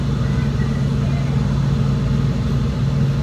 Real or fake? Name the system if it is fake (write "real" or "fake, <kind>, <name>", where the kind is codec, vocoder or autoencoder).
real